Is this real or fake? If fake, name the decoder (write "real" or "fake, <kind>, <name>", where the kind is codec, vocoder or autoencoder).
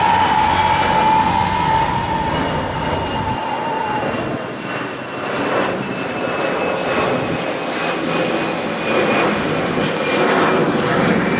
real